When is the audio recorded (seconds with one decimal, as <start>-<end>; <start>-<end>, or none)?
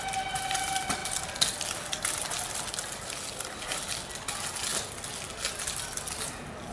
1.0-1.6; 4.7-5.3